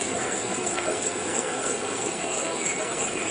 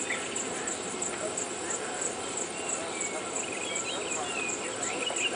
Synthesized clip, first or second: first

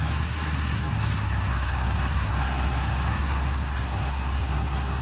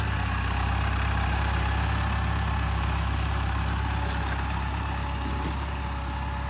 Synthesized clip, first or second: first